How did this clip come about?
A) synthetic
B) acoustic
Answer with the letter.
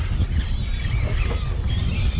A